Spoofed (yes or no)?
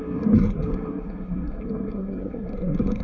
yes